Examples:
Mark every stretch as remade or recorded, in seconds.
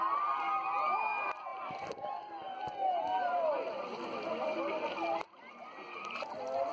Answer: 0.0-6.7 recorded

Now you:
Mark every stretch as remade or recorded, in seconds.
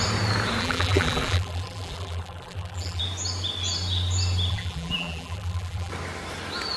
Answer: 0.0-0.6 recorded; 0.6-3.0 remade; 3.0-4.5 recorded; 4.5-5.9 remade; 5.9-6.8 recorded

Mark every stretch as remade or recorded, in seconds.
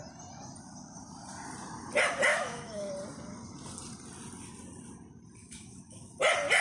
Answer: 0.0-2.3 recorded; 2.3-2.9 remade; 2.9-5.4 recorded; 5.4-6.1 remade; 6.1-6.6 recorded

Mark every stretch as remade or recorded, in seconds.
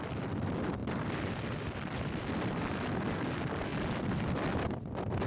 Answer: 0.0-0.8 recorded; 0.8-2.2 remade; 2.2-3.7 recorded; 3.7-4.8 remade; 4.8-5.3 recorded